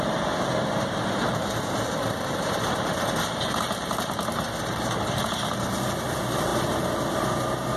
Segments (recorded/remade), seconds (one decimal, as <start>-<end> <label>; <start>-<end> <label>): 0.0-6.5 remade; 6.5-7.8 recorded